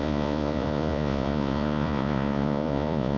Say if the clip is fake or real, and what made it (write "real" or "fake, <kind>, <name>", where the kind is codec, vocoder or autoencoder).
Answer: fake, vocoder, Vocos